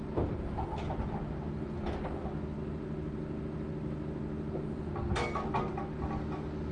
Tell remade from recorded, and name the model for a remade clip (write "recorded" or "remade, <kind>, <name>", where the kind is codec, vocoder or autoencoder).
recorded